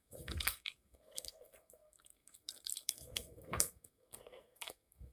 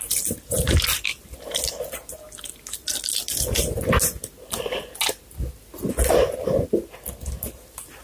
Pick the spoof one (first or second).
first